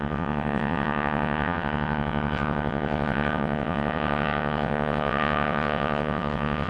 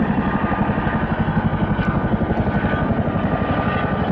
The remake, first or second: first